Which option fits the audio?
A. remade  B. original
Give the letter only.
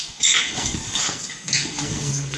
A